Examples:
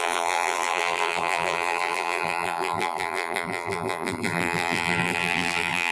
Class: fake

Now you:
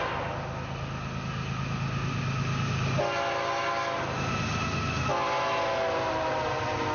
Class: real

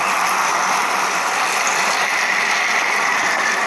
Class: fake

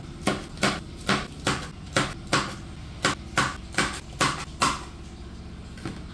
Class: real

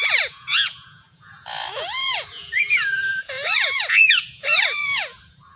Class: fake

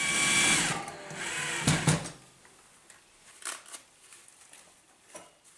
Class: real